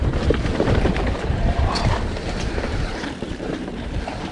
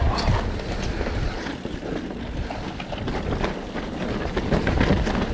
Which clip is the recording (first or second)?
second